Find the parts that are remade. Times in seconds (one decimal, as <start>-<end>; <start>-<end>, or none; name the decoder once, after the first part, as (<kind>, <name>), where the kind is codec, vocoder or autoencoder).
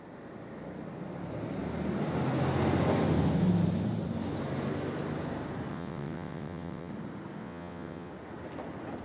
5.7-6.9 (vocoder, WaveNeXt); 7.4-8.1